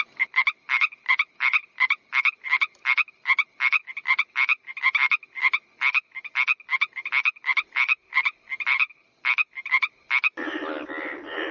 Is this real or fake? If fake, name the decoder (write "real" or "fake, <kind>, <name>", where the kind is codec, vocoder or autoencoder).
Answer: real